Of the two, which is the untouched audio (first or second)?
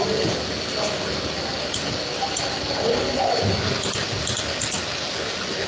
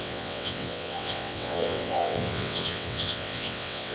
first